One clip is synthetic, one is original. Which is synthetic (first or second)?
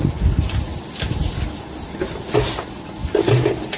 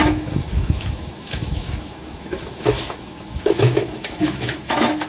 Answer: second